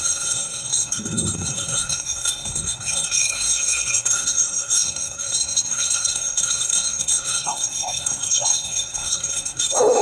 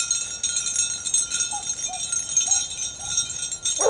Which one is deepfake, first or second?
first